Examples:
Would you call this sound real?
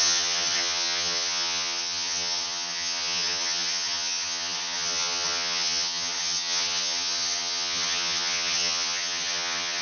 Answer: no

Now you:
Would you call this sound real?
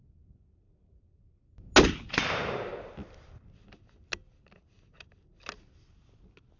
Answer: yes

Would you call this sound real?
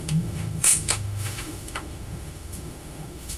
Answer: no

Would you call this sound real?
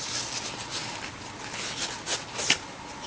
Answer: yes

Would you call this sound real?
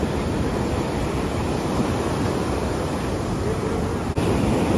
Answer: yes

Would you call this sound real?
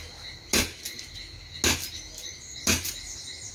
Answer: yes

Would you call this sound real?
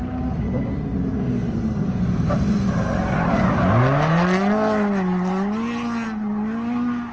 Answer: yes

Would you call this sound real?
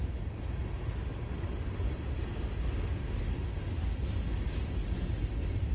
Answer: yes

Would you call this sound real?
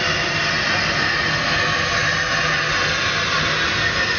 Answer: yes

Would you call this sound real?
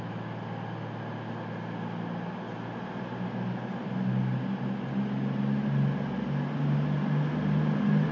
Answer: yes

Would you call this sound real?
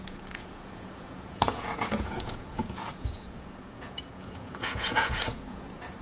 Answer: no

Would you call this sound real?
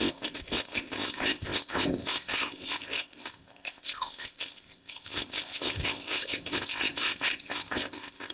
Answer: no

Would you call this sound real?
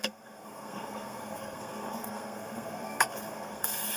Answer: no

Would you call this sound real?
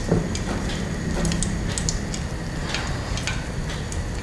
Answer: yes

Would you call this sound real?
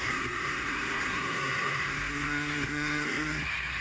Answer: no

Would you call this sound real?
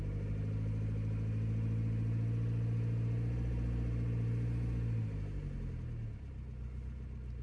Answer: yes